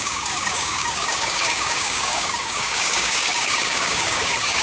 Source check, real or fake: fake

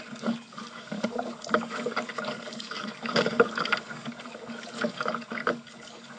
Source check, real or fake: fake